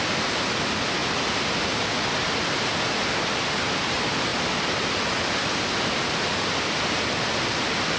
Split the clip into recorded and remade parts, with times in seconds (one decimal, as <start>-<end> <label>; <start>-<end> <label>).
0.0-8.0 recorded